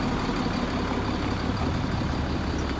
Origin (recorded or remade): recorded